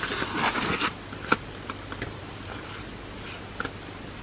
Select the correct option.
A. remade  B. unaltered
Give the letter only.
B